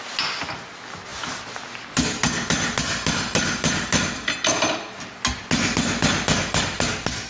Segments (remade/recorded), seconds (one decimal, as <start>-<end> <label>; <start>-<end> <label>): 0.0-7.3 recorded